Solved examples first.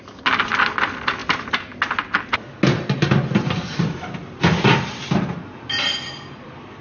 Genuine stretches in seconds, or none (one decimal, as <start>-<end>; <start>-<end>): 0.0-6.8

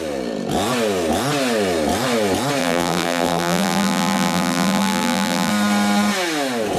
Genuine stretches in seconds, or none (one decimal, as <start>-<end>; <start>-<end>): 0.0-2.6; 5.5-6.8

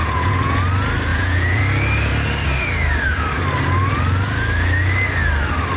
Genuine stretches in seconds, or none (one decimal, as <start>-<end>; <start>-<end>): 0.6-1.1; 1.6-5.8